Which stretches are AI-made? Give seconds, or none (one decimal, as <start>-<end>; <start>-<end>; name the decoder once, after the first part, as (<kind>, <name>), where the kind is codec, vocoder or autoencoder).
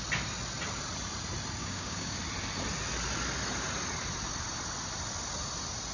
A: 1.6-2.2 (codec, DAC)